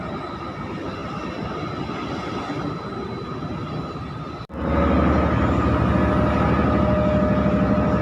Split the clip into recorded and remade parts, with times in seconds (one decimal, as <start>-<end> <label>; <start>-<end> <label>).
0.0-1.0 recorded; 1.0-2.3 remade; 2.3-8.0 recorded